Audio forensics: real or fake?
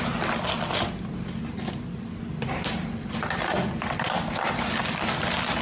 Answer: real